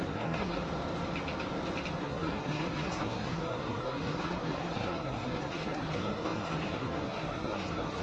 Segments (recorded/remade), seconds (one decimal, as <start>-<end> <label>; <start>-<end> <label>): 0.0-0.6 remade; 0.6-2.0 recorded; 2.0-8.0 remade